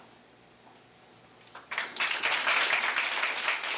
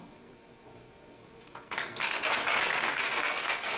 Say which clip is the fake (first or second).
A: second